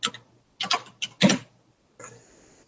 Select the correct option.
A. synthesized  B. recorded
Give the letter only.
B